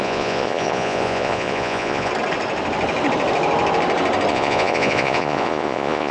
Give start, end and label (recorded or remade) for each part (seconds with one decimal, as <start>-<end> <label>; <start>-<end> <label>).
0.0-2.1 remade; 2.1-4.3 recorded; 4.3-6.1 remade